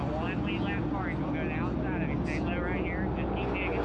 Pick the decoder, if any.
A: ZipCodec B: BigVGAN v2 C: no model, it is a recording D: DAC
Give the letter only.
C